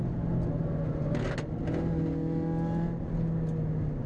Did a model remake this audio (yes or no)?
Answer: no